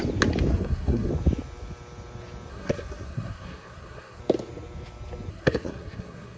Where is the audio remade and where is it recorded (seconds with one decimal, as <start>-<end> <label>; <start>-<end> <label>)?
0.0-0.5 recorded; 0.5-1.1 remade; 1.1-2.5 recorded; 2.5-4.2 remade; 4.2-5.3 recorded; 5.3-6.4 remade